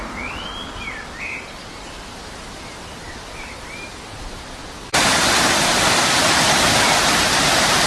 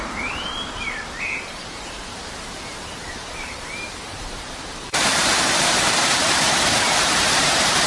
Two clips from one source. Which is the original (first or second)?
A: first